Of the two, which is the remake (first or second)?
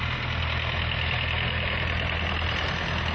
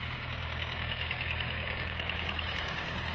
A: second